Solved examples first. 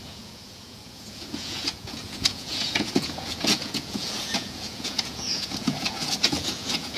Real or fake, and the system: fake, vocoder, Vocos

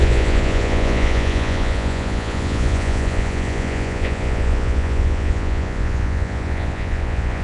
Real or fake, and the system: fake, vocoder, Vocos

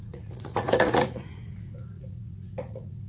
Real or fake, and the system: fake, vocoder, Vocos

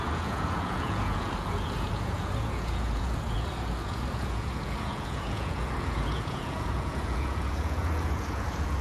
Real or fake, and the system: fake, vocoder, Vocos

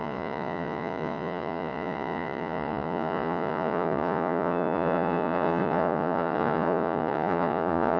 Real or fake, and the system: fake, vocoder, Vocos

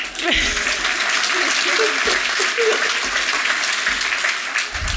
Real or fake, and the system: real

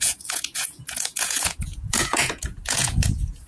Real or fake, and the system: fake, vocoder, Vocos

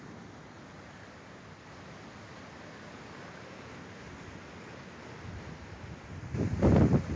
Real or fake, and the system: real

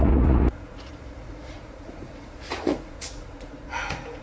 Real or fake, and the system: fake, vocoder, Vocos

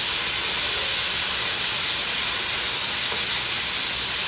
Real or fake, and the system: real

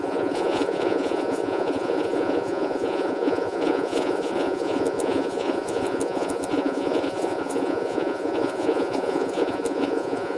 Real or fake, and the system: fake, vocoder, Vocos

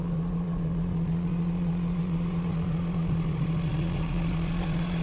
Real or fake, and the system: fake, vocoder, Vocos